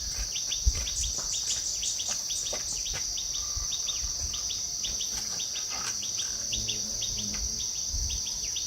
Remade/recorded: recorded